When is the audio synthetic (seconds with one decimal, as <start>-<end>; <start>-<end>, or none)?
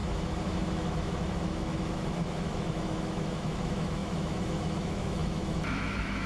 0.0-6.3